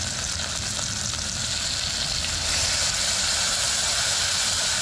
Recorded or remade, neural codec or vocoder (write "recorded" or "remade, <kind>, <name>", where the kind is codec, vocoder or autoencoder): recorded